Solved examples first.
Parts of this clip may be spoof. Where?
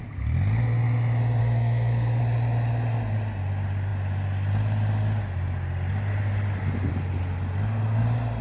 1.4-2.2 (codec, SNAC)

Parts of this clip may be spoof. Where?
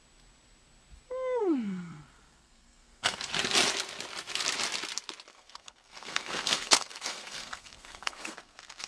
1.4-3.3 (codec, SNAC); 5.3-8.9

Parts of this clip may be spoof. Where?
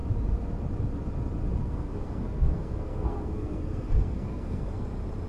1.6-4.8 (codec, SNAC)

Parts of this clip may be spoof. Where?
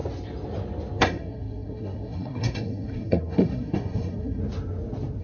1.0-4.4 (codec, SNAC)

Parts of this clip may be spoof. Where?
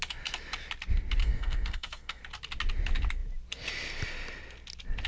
1.2-2.2 (codec, SNAC)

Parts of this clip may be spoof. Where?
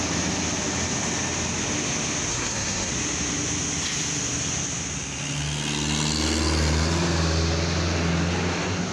2.3-2.9 (codec, SNAC)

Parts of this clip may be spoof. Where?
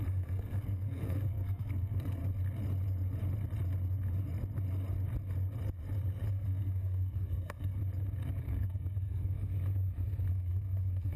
0.0-2.2 (codec, SNAC); 6.3-7.8; 8.4-9.5; 10.3-11.2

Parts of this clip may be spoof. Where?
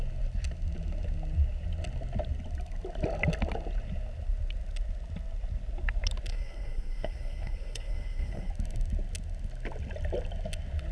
6.3-8.5 (codec, SNAC)